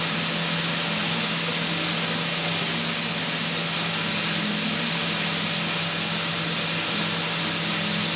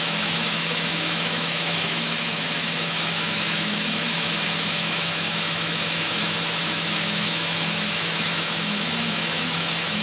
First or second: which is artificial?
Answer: second